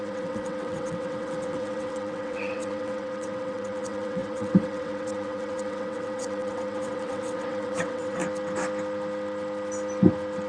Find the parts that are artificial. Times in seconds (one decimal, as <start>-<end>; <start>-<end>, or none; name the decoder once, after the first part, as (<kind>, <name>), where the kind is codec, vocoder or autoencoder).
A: 0.0-8.2 (vocoder, WaveNeXt)